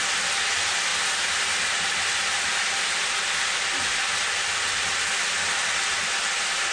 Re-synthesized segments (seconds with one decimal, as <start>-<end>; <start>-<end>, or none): none